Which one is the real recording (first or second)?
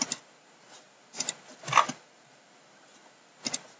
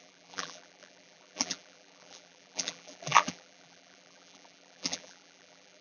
first